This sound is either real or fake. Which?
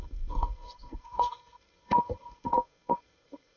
fake